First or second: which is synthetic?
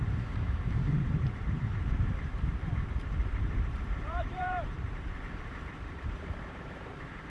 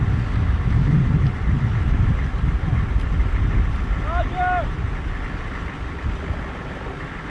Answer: first